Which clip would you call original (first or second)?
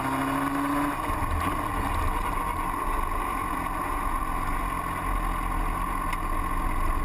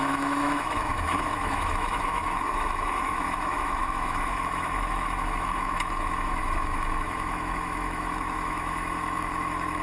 first